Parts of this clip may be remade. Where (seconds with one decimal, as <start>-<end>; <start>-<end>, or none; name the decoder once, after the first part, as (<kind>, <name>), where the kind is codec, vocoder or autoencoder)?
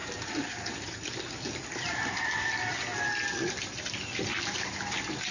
0.8-2.9 (vocoder, BigVGAN v2); 4.3-5.3